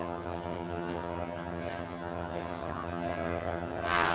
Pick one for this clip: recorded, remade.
remade